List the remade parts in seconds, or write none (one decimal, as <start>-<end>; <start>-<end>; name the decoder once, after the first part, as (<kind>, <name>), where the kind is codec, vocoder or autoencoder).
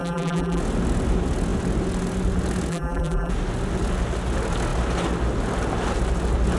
0.0-0.6 (vocoder, BigVGAN v2); 2.7-3.3